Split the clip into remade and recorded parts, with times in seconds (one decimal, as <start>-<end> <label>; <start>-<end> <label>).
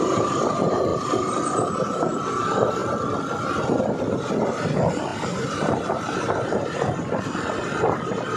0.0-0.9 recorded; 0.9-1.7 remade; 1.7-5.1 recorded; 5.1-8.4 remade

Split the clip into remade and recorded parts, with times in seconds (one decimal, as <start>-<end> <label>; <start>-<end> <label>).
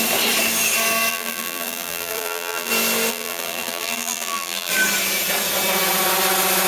0.0-1.1 recorded; 1.1-2.7 remade; 2.7-3.1 recorded; 3.1-4.7 remade; 4.7-6.7 recorded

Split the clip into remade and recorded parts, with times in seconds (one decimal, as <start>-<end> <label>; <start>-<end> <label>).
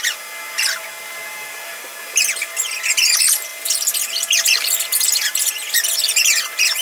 0.0-3.5 recorded; 3.5-5.5 remade; 5.5-6.8 recorded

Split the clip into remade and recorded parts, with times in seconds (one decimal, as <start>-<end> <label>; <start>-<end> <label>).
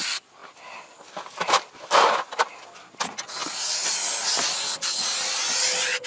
0.0-0.4 recorded; 0.4-2.5 remade; 2.5-6.1 recorded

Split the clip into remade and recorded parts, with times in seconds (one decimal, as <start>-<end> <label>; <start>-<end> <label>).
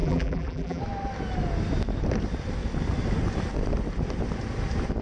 0.0-0.8 remade; 0.8-5.0 recorded